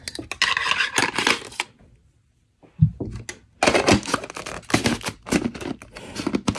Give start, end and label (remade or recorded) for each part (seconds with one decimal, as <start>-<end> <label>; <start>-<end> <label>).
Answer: 0.0-6.6 recorded